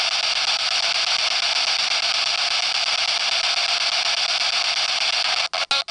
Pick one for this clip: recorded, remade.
recorded